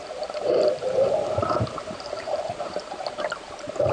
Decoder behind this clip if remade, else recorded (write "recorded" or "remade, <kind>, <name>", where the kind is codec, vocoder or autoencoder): remade, vocoder, BigVGAN v2